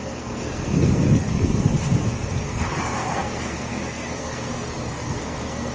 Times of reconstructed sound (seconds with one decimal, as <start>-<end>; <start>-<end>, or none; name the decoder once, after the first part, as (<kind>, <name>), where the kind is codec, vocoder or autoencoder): 0.0-1.7 (codec, SNAC); 2.4-5.7